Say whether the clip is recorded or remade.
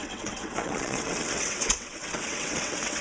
remade